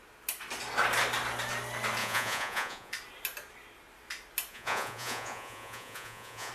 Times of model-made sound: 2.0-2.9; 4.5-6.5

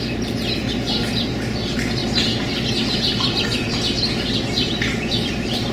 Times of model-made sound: none

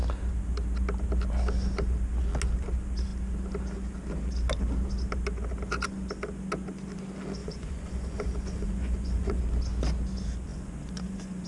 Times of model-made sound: 7.4-9.4; 10.5-11.5